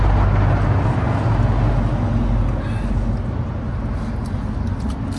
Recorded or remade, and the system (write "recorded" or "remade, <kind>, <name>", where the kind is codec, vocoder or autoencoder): recorded